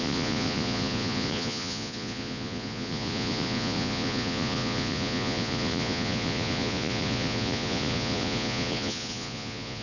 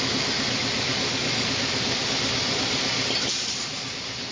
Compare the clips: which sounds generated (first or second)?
first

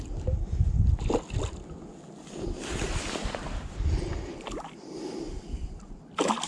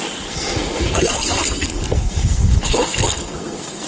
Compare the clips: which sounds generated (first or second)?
second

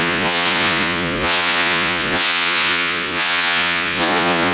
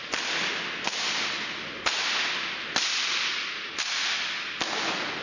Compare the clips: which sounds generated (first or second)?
first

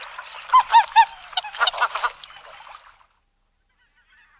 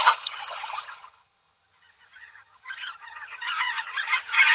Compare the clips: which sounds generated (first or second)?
second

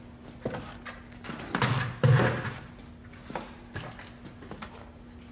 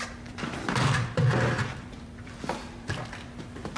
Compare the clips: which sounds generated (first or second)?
second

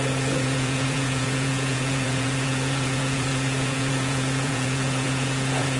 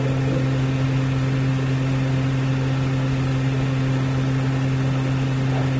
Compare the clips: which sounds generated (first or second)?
first